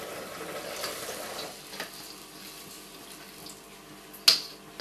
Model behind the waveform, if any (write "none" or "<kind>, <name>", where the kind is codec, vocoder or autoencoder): none